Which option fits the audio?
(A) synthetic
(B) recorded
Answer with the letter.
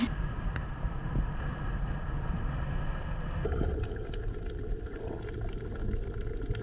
B